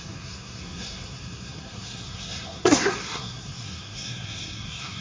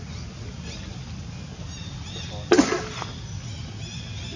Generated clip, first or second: first